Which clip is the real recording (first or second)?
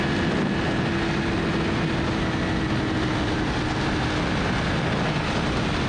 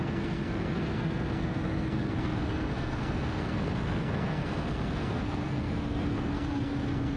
first